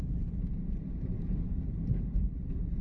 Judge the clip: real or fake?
fake